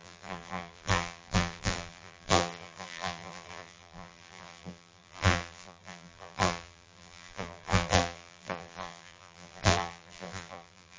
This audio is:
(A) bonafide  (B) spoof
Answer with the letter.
B